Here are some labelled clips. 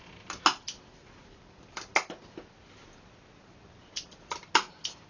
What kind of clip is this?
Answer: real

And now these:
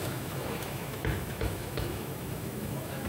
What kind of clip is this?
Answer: fake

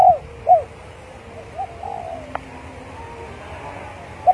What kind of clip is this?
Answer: real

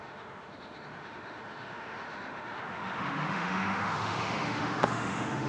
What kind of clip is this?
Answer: fake